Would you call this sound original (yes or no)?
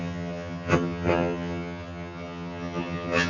no